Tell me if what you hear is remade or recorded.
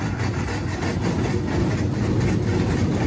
recorded